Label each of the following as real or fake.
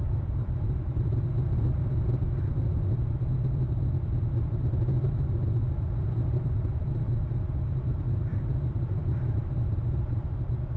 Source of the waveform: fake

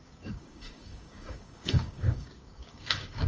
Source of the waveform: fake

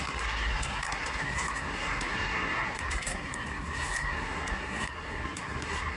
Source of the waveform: fake